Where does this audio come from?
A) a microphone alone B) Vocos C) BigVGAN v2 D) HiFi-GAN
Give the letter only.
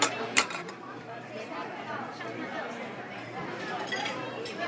C